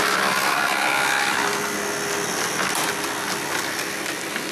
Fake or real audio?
real